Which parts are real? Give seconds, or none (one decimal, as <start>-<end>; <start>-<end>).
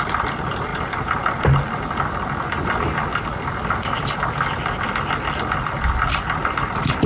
0.0-7.1